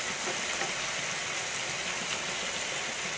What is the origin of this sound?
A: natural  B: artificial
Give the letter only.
A